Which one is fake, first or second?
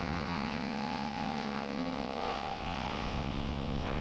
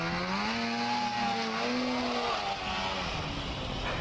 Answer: first